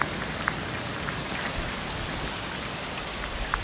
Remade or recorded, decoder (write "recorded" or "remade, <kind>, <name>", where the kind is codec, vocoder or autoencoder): recorded